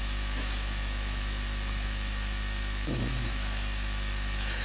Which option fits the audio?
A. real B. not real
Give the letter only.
B